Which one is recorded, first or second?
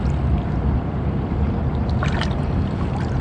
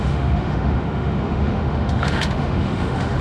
first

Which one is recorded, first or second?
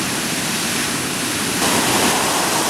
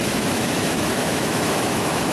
first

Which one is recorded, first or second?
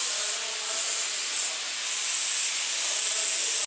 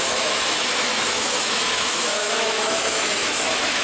first